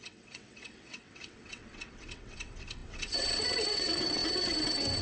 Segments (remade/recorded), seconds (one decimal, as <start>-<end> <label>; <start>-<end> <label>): 0.0-5.0 remade